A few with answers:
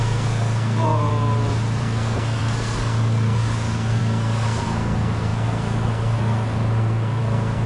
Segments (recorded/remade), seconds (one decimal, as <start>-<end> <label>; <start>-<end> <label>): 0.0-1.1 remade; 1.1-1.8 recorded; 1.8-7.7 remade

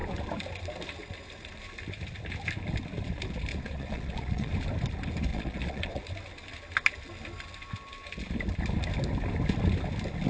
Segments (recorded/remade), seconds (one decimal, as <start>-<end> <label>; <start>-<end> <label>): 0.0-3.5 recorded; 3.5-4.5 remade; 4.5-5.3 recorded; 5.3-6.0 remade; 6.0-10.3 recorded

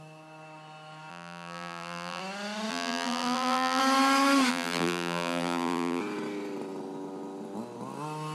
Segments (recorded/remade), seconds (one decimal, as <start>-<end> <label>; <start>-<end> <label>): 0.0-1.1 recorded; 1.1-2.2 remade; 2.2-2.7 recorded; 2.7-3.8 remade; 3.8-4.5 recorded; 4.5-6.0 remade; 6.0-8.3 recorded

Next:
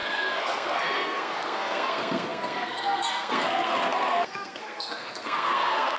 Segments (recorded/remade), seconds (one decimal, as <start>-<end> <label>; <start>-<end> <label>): 0.0-6.0 remade